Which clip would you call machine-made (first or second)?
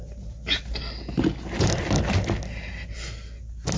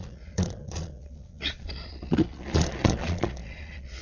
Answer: second